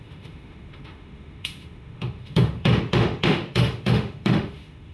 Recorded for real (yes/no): no